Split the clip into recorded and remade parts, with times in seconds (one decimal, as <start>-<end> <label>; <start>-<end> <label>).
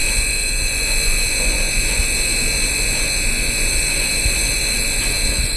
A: 0.0-5.6 remade